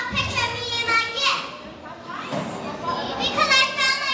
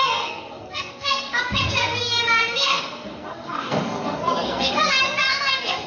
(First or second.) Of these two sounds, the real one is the first